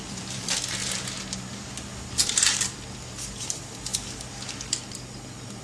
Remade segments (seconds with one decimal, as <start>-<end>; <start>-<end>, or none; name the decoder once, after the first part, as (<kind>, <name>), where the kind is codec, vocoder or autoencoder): 0.0-0.8 (vocoder, BigVGAN v2); 2.0-5.6